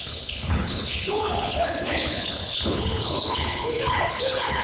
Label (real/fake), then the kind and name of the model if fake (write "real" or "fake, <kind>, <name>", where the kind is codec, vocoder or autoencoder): fake, codec, HILCodec